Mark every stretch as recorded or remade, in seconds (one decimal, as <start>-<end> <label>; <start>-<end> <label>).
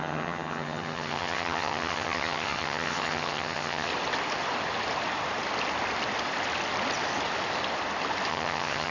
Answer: 0.0-3.9 remade; 3.9-8.3 recorded; 8.3-8.9 remade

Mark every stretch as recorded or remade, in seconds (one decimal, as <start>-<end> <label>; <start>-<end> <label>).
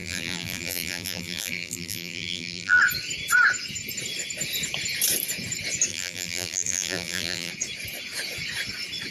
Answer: 0.0-2.8 remade; 2.8-5.9 recorded; 5.9-7.5 remade; 7.5-9.1 recorded